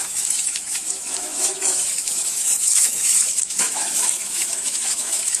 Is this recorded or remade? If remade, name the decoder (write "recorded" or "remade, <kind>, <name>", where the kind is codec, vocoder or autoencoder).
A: remade, autoencoder, DAC-VAE